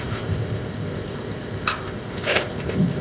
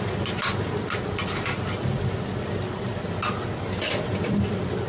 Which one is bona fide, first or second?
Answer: second